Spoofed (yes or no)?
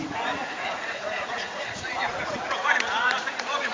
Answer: yes